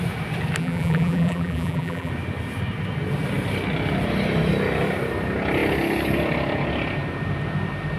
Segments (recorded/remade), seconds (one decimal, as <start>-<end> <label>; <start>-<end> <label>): 0.0-0.6 recorded; 0.6-2.1 remade; 2.1-8.0 recorded